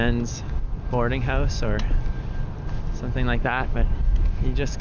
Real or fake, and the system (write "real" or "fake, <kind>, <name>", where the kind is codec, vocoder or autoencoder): real